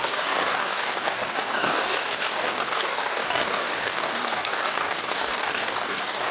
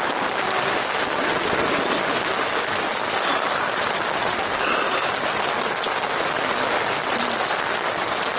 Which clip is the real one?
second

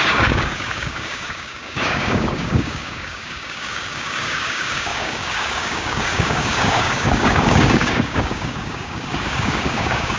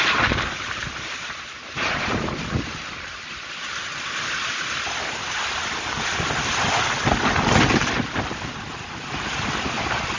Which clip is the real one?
second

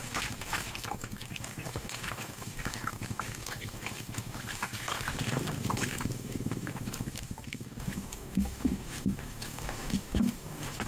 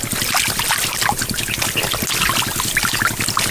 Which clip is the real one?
second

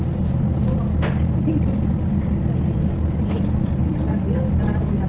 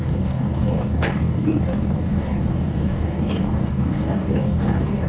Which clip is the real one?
first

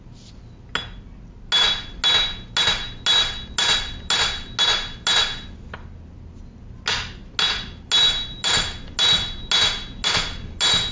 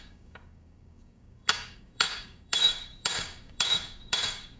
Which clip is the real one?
first